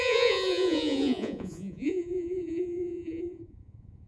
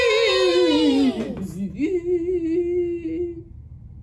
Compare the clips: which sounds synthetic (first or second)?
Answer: first